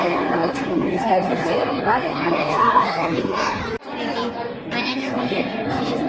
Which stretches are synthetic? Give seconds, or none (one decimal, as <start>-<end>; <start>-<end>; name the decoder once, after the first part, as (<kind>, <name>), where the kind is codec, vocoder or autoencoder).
0.0-3.6 (codec, SNAC); 4.8-6.1